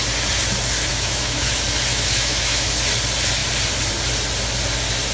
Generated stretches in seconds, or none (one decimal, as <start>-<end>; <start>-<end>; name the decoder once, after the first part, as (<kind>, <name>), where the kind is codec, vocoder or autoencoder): 0.9-1.5 (autoencoder, DAC-VAE); 1.9-2.7